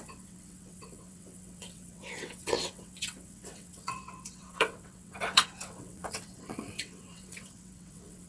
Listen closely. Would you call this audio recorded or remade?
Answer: remade